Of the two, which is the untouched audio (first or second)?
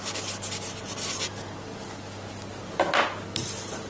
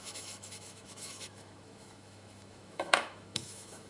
first